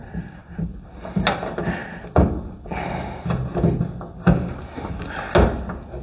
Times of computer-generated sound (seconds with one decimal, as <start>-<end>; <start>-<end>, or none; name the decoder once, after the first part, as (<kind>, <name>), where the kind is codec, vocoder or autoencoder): none